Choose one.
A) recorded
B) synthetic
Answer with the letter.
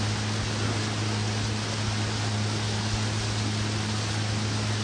A